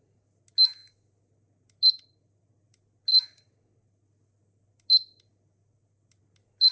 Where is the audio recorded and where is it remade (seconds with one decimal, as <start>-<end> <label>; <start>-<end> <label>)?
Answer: 0.0-6.7 recorded